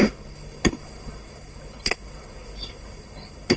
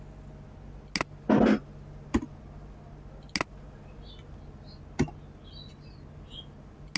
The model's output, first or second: first